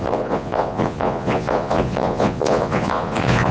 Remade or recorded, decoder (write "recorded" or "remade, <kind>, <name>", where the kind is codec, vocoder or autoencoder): remade, vocoder, Vocos